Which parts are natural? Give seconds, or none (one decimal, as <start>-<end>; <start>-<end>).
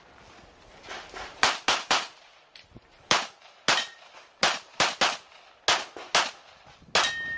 0.0-0.7; 4.9-7.4